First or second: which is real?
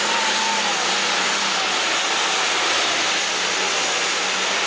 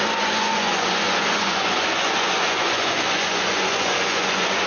first